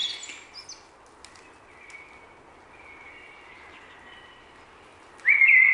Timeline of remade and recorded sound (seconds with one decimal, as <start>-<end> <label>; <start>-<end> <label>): 0.0-5.7 recorded